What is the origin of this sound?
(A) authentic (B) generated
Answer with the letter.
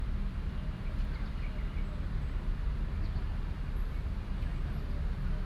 A